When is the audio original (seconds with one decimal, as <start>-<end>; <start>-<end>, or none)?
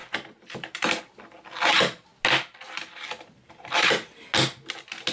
0.0-5.1